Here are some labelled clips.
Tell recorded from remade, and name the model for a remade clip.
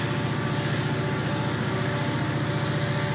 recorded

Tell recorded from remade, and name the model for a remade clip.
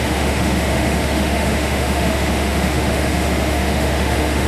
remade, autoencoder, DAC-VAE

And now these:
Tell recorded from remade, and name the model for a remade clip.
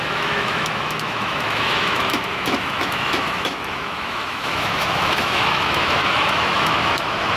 remade, autoencoder, DAC-VAE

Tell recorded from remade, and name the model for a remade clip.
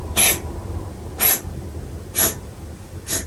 recorded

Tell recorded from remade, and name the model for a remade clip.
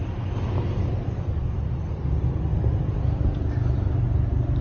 recorded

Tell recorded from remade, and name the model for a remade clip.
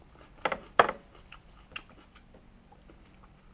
recorded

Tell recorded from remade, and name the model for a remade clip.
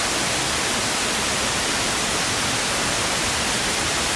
recorded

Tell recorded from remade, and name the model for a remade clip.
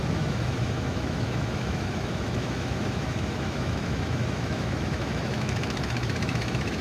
remade, autoencoder, DAC-VAE